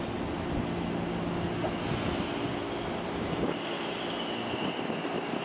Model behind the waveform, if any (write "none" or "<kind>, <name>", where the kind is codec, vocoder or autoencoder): none